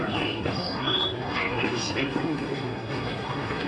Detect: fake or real fake